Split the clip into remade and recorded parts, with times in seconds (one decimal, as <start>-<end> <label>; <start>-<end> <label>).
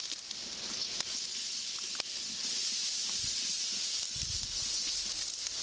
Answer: 0.0-5.6 recorded